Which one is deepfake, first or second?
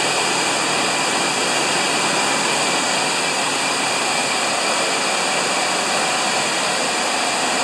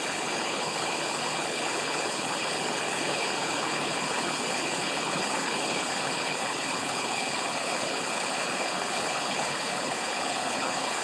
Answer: second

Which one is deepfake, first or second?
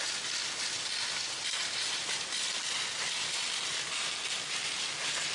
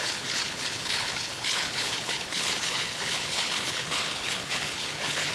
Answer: second